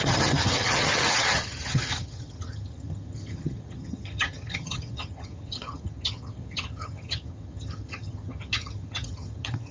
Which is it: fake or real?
fake